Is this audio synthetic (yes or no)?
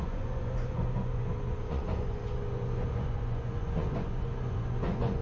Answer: yes